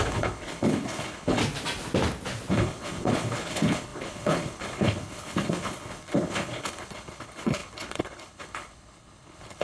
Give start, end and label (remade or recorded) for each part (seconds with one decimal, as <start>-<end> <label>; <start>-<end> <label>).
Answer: 0.0-1.4 remade; 1.4-2.5 recorded; 2.5-9.6 remade